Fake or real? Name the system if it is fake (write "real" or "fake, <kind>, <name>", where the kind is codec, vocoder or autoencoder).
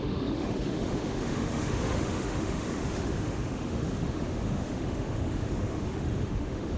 fake, autoencoder, DAC-VAE